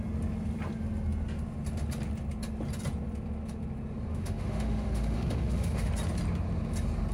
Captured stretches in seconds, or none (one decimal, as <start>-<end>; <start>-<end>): 0.0-4.1; 5.9-7.1